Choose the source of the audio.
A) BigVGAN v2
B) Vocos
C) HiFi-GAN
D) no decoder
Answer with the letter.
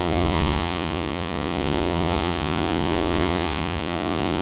B